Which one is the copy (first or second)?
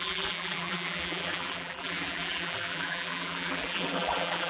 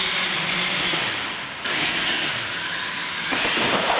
first